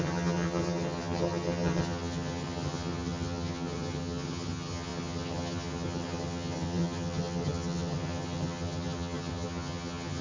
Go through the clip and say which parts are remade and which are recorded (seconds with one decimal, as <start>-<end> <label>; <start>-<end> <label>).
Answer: 0.0-10.2 remade